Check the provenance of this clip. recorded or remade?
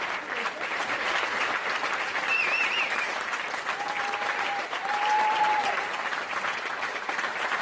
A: remade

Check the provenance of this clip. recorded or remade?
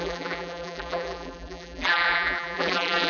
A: remade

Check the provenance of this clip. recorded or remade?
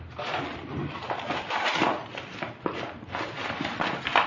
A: remade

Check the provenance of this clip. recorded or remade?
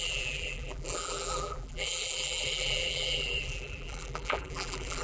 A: remade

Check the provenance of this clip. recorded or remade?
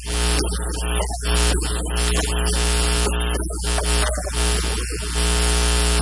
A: recorded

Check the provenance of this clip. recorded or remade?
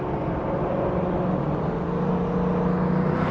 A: recorded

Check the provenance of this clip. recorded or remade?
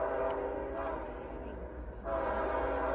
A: recorded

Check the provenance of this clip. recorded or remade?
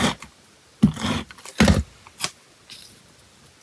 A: recorded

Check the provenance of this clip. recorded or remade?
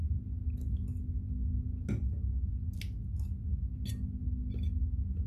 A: recorded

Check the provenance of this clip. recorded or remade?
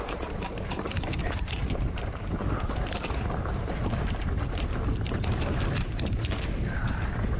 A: remade